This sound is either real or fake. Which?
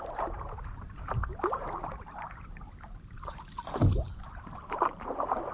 fake